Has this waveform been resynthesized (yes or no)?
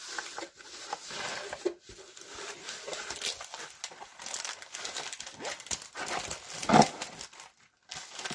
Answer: no